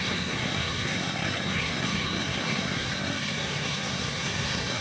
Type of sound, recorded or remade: remade